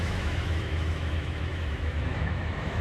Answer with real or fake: fake